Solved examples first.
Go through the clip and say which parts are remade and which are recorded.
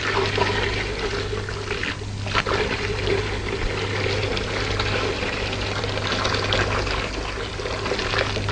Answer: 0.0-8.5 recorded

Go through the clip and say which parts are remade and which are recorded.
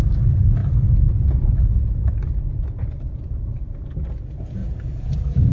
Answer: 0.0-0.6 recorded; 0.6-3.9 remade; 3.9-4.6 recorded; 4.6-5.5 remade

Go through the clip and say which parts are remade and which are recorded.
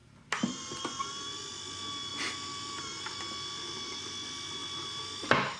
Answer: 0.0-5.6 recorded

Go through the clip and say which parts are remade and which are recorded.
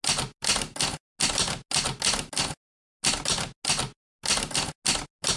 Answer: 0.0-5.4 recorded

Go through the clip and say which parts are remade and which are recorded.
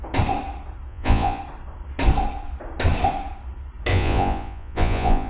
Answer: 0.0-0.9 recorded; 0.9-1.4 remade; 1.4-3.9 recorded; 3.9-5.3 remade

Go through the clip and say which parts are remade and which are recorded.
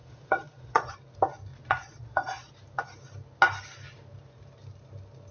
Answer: 0.0-0.9 remade; 0.9-1.5 recorded; 1.5-2.5 remade; 2.5-5.3 recorded